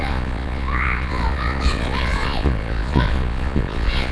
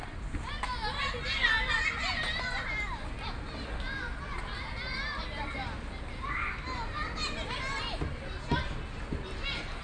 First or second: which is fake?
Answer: first